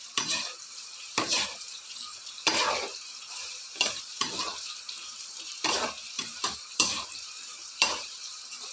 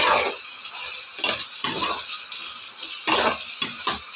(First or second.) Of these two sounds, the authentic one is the second